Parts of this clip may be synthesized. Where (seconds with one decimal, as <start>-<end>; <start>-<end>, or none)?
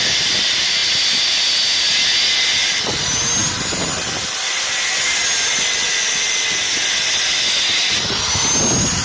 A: none